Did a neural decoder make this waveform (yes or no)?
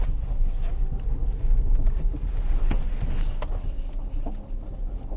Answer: no